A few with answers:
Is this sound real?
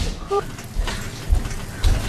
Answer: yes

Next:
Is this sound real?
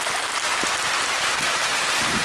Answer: yes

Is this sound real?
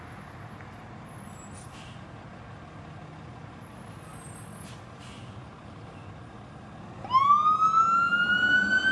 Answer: yes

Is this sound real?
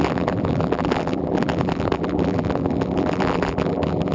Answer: no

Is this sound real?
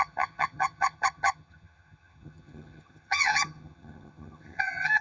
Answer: no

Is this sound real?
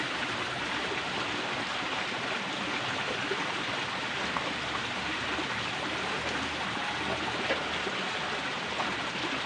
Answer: yes